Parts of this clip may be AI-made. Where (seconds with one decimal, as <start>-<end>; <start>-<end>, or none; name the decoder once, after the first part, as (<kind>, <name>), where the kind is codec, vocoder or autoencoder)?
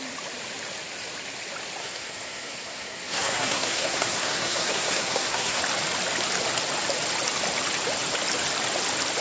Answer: 1.8-5.6 (codec, SNAC)